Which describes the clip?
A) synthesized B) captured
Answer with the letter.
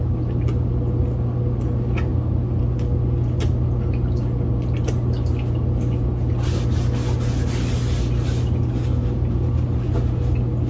B